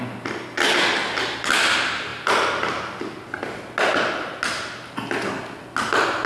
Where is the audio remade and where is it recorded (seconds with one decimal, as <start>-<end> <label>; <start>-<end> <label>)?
0.0-6.3 recorded